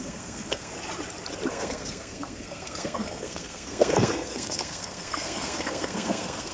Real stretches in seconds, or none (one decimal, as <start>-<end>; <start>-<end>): 0.7-1.5